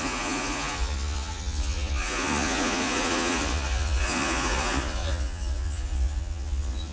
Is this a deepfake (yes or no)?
yes